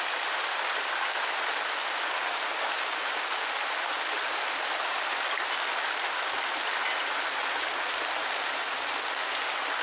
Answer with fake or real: real